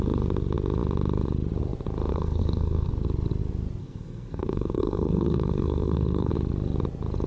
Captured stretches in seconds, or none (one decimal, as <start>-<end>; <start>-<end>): 0.0-2.1; 2.9-3.8; 6.3-7.3